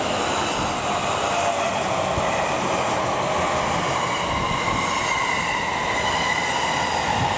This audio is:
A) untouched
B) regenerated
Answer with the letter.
A